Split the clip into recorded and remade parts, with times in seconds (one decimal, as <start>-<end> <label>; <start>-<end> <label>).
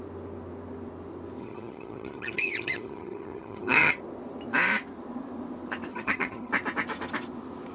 0.0-1.4 recorded; 1.4-4.0 remade; 4.0-5.9 recorded; 5.9-6.5 remade; 6.5-7.7 recorded